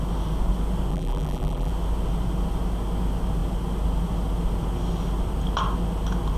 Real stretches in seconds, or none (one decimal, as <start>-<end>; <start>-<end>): 0.0-0.9; 1.7-6.4